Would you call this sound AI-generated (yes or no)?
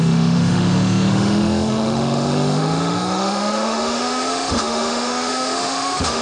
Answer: yes